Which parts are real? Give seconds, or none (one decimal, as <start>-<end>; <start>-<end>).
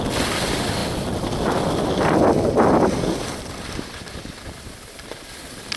0.0-5.8